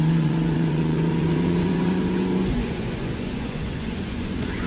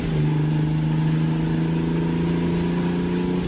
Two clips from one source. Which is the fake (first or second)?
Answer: first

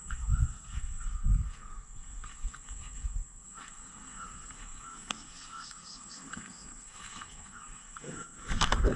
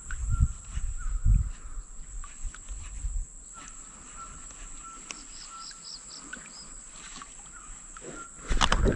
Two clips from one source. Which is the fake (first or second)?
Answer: first